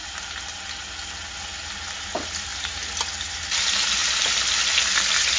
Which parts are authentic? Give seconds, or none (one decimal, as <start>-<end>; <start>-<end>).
0.0-5.4